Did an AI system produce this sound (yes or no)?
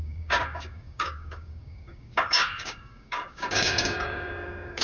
yes